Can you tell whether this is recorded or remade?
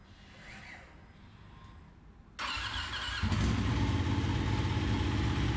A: recorded